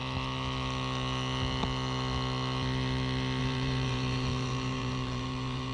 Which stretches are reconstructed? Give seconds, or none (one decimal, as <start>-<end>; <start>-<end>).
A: 3.4-5.7